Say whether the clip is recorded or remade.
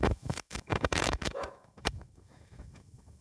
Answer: remade